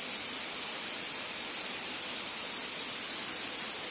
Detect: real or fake real